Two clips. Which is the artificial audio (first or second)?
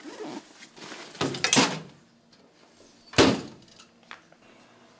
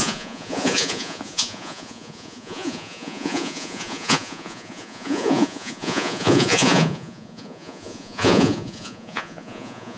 second